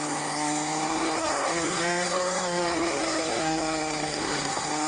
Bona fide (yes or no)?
no